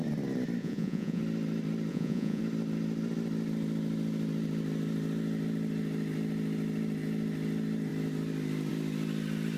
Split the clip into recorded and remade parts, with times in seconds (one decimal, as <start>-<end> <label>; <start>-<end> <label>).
0.0-0.6 recorded; 0.6-1.2 remade; 1.2-1.9 recorded; 1.9-2.4 remade; 2.4-9.6 recorded